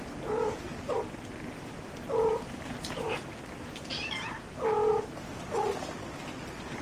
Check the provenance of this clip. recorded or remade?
recorded